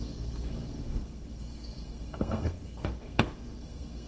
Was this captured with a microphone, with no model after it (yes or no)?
no